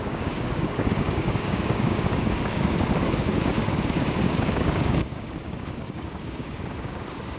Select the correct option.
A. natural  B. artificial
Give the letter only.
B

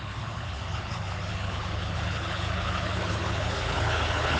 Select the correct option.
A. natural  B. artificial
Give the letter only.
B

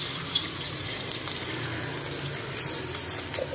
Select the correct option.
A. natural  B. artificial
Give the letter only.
A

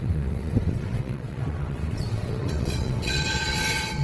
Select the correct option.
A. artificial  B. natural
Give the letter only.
A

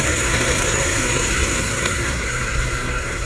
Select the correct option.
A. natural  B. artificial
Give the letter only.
B